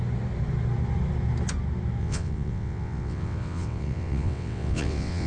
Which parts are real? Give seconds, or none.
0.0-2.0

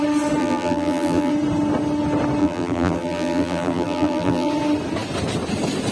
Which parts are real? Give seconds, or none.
0.0-0.4; 1.3-2.4; 4.5-5.9